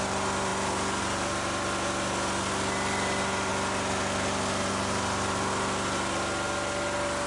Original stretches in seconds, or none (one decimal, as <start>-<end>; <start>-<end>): 0.0-7.3